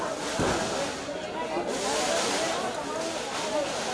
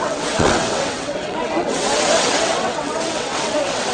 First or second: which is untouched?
first